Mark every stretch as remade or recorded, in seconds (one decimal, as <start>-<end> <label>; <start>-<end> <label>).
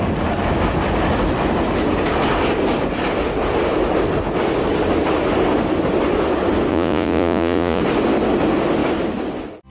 0.0-6.7 recorded; 6.7-7.8 remade; 7.8-9.7 recorded